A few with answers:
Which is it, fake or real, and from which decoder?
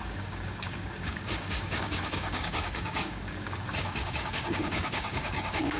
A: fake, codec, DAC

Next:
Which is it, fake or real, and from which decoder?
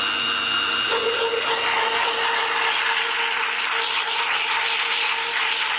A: real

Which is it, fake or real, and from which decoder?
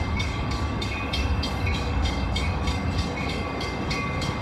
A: fake, codec, DAC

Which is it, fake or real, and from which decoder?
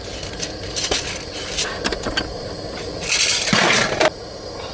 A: real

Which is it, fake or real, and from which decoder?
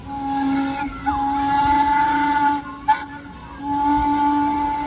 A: real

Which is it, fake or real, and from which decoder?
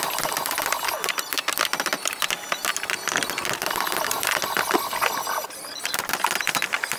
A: real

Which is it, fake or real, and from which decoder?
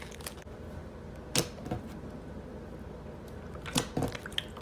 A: real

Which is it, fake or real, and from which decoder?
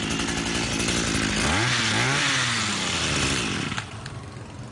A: real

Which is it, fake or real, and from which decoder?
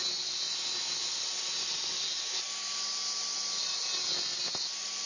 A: real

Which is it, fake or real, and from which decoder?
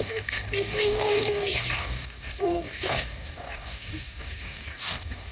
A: fake, codec, DAC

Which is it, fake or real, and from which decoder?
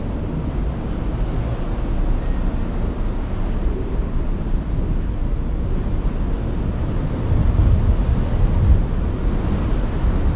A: real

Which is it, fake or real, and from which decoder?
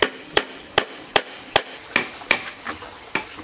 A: real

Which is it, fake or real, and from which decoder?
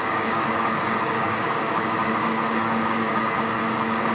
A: fake, codec, DAC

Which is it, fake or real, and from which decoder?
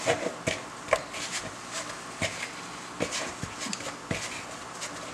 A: real